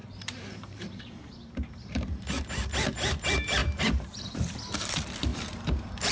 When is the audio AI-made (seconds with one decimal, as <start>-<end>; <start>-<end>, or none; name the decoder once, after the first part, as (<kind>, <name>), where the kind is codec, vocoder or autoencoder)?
0.0-2.2 (vocoder, BigVGAN v2); 3.6-4.4; 5.3-6.1

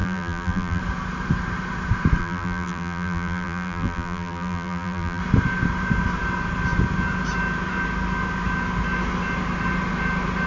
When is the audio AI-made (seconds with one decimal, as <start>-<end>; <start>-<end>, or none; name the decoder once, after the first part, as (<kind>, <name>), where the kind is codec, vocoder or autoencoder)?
0.0-0.8 (vocoder, BigVGAN v2); 2.2-5.2

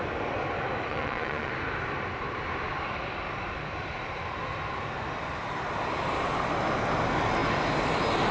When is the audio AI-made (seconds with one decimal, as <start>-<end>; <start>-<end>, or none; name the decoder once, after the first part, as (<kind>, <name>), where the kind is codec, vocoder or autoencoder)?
0.9-1.5 (vocoder, Vocos)

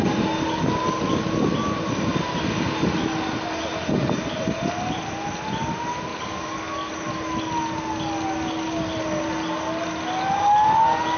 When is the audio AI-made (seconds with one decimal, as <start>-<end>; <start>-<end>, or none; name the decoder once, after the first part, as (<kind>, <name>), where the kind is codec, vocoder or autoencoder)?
6.1-6.9 (codec, DAC)

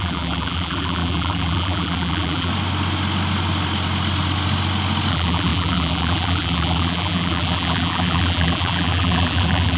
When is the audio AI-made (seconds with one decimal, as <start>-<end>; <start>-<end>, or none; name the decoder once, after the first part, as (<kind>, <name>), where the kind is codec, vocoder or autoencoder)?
0.0-2.5 (vocoder, BigVGAN v2); 5.1-9.8

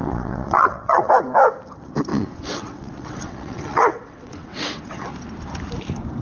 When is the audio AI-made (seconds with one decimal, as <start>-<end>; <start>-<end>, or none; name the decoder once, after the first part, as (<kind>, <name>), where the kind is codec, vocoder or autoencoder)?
0.0-1.1 (vocoder, WaveNeXt); 2.1-5.1

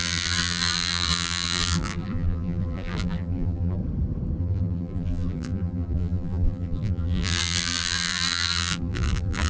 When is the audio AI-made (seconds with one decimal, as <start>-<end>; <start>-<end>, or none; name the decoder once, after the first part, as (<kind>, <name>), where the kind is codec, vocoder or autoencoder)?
0.0-3.8 (vocoder, BigVGAN v2); 4.4-9.5